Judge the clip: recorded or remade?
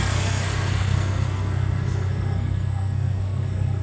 remade